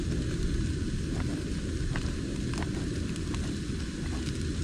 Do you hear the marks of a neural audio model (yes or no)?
no